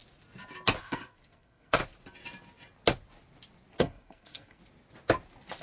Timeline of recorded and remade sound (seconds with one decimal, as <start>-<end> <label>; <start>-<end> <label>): 0.0-0.8 recorded; 0.8-1.8 remade; 1.8-3.8 recorded; 3.8-4.6 remade; 4.6-5.6 recorded